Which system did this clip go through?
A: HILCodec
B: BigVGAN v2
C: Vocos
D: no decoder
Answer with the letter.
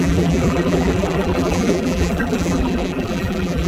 B